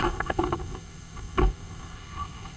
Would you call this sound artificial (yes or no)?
yes